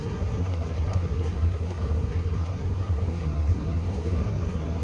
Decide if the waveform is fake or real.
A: fake